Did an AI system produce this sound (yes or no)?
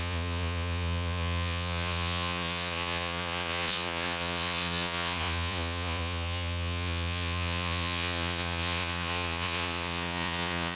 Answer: yes